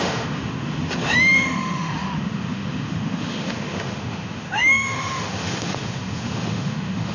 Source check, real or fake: fake